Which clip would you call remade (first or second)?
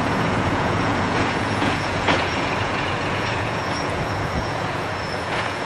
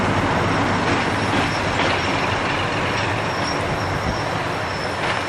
first